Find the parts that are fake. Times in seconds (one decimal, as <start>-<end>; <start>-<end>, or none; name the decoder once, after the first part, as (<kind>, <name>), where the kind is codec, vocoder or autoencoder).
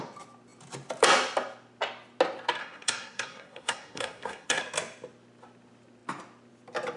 2.6-4.6 (codec, SNAC)